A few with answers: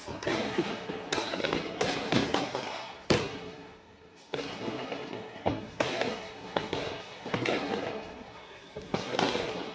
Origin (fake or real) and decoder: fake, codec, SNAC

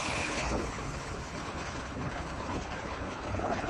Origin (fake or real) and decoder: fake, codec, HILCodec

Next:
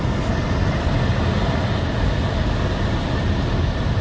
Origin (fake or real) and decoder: real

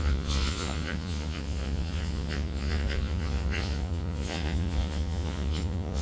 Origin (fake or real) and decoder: fake, vocoder, Vocos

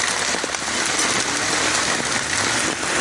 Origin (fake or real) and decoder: real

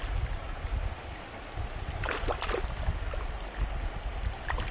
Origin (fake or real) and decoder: real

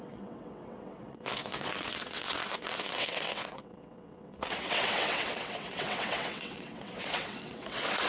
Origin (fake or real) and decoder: fake, vocoder, WaveNeXt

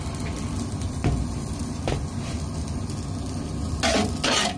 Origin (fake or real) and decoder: real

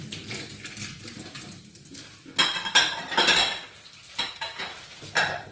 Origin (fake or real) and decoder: real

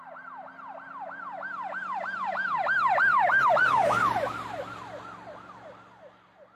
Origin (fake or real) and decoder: real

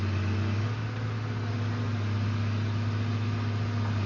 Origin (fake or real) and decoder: real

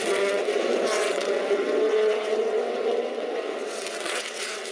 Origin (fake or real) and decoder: fake, vocoder, WaveNeXt